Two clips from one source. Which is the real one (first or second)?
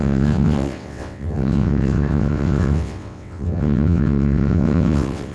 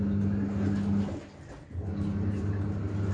second